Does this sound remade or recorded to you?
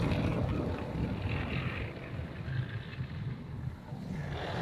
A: recorded